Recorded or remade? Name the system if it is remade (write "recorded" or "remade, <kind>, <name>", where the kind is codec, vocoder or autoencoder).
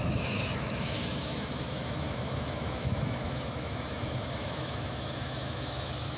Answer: remade, autoencoder, DAC-VAE